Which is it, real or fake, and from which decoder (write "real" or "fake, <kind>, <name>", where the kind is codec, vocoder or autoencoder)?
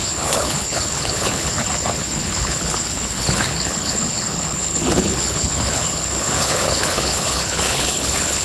fake, codec, HILCodec